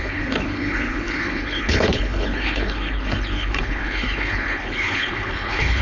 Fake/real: fake